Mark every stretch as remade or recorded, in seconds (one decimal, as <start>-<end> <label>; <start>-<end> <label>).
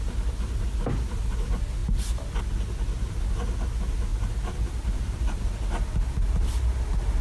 0.0-4.1 recorded; 4.1-5.0 remade; 5.0-7.2 recorded